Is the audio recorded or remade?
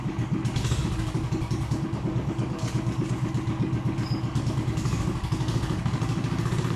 remade